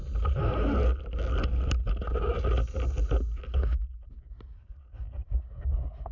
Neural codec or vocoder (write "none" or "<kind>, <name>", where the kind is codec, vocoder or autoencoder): none